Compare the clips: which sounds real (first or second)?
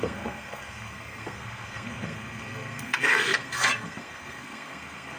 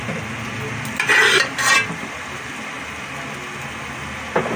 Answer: second